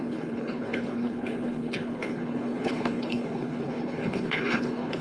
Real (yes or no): no